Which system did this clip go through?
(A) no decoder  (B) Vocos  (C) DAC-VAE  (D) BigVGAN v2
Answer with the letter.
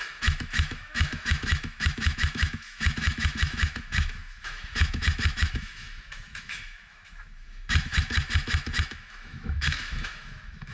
C